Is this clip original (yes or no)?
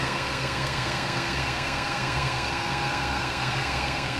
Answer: no